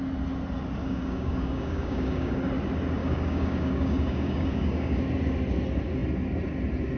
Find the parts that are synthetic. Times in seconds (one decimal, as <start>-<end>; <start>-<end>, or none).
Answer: 0.8-2.5; 3.0-5.0